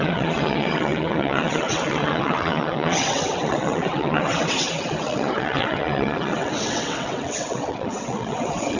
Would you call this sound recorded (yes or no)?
no